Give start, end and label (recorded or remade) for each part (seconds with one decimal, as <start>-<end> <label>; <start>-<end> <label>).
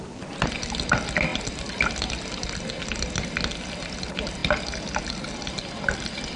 0.0-6.4 recorded